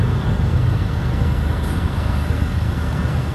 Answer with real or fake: fake